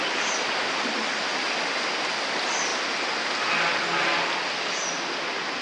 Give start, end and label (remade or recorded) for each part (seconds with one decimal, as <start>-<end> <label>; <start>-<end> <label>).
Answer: 0.0-5.6 recorded